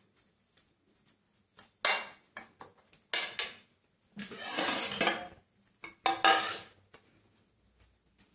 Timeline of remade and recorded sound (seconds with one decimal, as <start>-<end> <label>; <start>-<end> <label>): 0.0-8.3 recorded